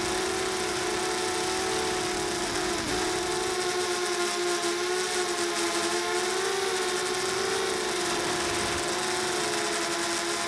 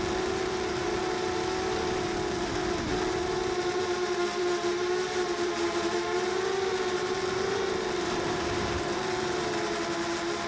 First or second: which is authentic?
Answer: first